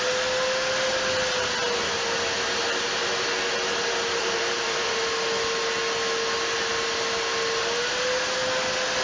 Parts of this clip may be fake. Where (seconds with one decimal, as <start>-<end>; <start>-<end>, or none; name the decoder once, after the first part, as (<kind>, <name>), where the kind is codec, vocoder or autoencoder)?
4.2-5.0 (vocoder, BigVGAN v2)